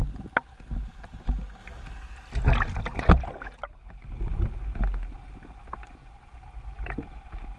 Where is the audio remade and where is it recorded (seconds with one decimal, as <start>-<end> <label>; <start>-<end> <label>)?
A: 0.0-6.0 recorded; 6.0-7.6 remade